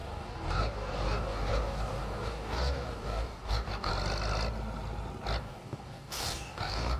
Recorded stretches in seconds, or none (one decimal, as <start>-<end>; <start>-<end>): 3.9-5.4